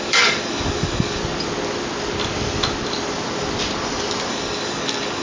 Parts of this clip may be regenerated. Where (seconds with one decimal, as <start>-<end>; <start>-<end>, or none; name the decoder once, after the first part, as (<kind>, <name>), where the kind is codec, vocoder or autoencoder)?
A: 0.0-1.2 (codec, DAC); 4.3-5.2